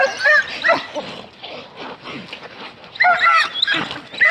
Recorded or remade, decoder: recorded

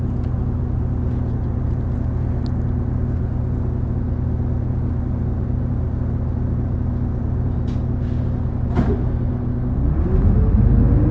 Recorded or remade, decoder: recorded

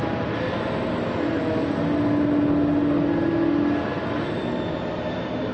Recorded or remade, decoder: recorded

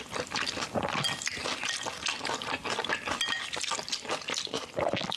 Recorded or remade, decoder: recorded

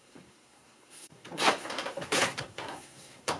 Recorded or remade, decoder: remade, codec, SNAC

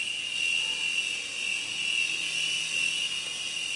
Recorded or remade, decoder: recorded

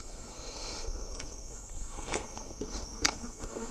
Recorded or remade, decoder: remade, codec, SNAC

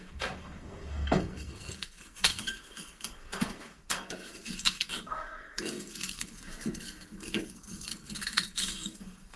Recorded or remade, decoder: remade, codec, SNAC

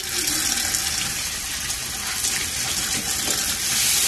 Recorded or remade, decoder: recorded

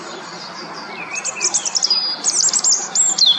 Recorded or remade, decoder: recorded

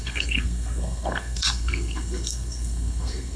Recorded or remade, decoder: remade, codec, SNAC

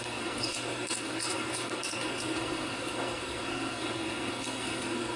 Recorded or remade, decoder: remade, codec, SNAC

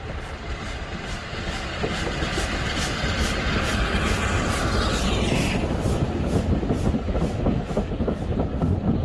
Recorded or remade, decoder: recorded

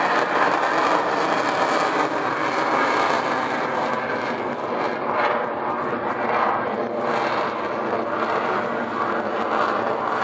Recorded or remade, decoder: recorded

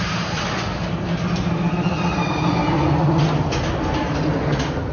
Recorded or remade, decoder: recorded